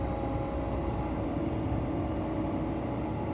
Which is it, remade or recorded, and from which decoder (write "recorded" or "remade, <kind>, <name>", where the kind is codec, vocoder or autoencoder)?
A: recorded